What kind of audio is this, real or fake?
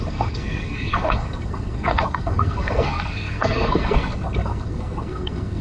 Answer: fake